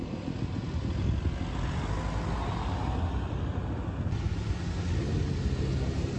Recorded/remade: recorded